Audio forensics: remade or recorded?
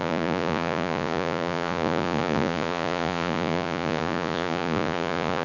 remade